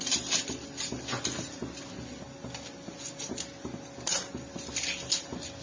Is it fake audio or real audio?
real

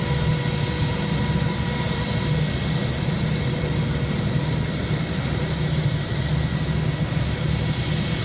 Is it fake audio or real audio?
real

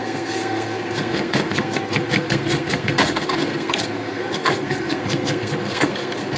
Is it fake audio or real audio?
fake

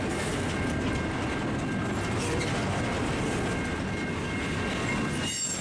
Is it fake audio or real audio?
real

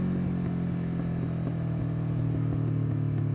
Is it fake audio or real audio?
real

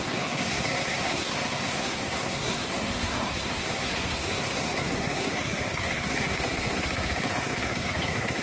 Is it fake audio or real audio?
fake